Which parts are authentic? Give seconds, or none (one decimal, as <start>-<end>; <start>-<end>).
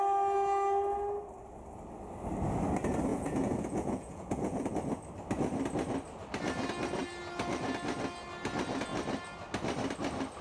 0.0-3.1; 4.7-10.4